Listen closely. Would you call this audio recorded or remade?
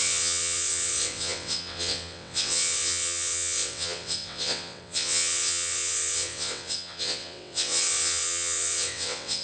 remade